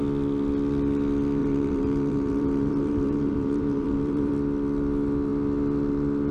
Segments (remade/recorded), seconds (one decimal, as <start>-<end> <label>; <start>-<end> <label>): 0.0-1.4 recorded; 1.4-4.3 remade; 4.3-6.3 recorded